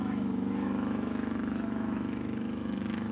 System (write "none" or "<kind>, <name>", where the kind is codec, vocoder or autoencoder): autoencoder, DAC-VAE